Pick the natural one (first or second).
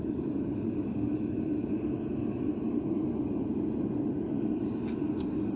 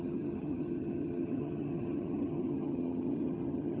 first